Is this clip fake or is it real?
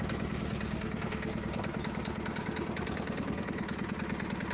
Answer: real